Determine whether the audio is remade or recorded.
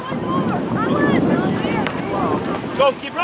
recorded